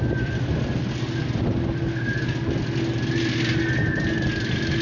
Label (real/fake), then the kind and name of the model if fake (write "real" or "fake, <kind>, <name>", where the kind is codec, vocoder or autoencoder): real